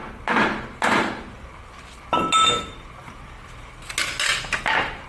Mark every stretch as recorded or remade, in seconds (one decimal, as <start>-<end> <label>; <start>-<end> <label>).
0.0-5.1 recorded